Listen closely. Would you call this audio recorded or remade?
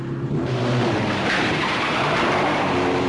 remade